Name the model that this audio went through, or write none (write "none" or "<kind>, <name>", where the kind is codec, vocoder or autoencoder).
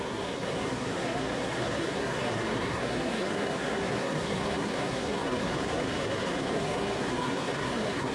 codec, SNAC